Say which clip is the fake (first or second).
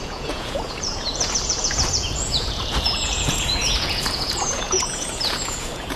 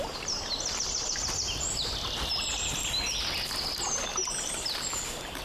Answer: first